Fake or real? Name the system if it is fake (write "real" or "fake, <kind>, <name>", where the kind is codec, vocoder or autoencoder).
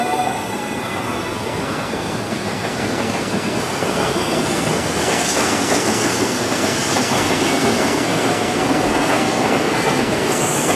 fake, codec, SNAC